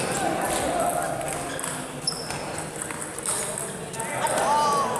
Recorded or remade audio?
recorded